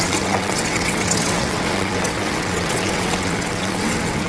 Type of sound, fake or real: fake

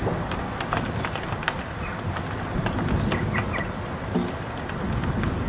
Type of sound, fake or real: real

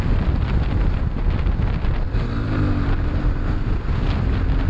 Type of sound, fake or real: real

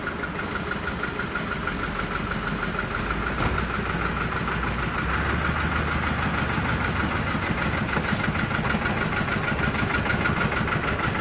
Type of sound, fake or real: real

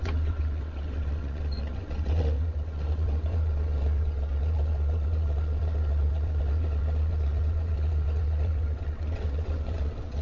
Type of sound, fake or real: fake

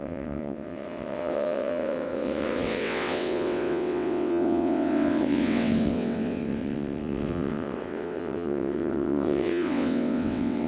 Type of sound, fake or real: fake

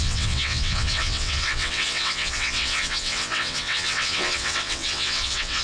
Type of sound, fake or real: fake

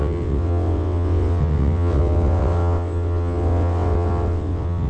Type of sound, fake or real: fake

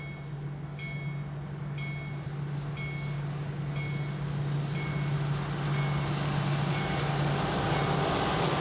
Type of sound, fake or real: real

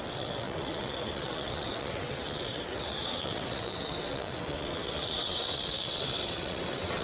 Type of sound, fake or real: fake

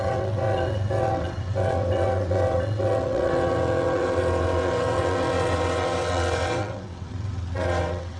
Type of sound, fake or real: fake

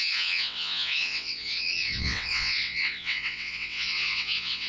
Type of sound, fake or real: fake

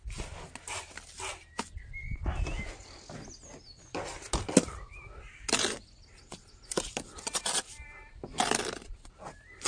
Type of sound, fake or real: real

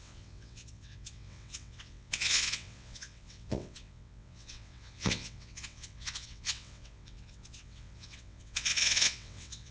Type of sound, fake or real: fake